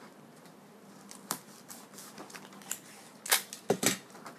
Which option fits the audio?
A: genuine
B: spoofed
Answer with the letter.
A